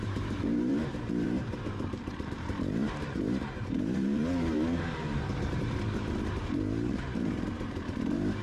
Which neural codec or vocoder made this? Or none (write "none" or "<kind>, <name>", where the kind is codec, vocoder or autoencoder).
vocoder, BigVGAN v2